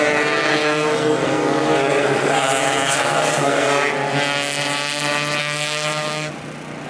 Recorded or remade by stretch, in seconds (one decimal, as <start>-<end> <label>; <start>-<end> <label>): 0.0-0.5 recorded; 0.5-3.9 remade; 3.9-5.4 recorded; 5.4-6.3 remade; 6.3-6.9 recorded